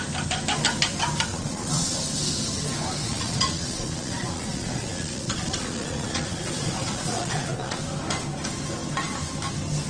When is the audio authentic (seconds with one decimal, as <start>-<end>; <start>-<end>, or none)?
0.0-1.3; 2.0-3.0; 7.8-9.9